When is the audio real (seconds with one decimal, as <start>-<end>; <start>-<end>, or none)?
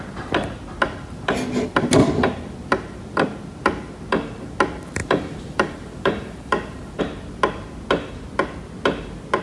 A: 0.0-5.0; 7.0-9.4